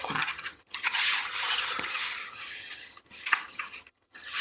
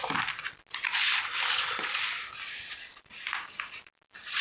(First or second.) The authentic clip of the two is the second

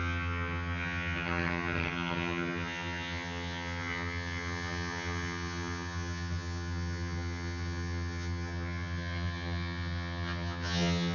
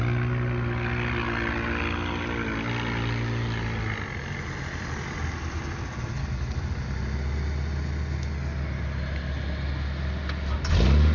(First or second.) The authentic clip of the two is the second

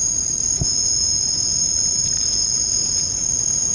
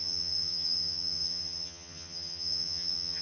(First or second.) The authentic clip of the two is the first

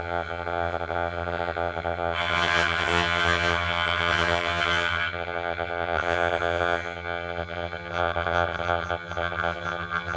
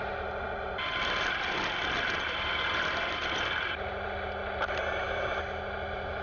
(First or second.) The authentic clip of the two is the second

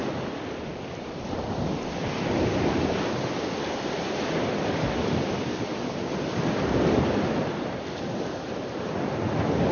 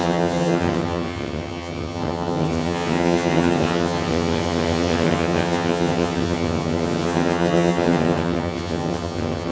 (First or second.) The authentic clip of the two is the first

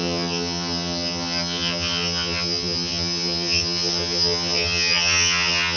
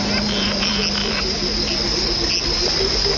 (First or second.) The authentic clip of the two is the second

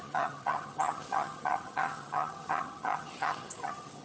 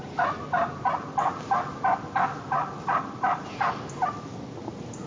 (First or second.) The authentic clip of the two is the second